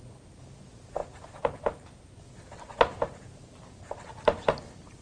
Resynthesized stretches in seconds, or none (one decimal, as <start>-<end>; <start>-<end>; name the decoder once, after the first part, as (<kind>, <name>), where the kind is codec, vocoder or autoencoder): none